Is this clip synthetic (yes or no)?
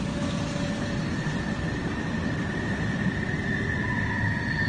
no